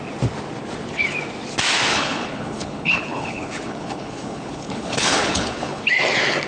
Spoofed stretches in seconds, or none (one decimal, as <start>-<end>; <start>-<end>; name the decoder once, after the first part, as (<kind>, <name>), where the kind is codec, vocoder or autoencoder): 1.9-5.8 (codec, HILCodec)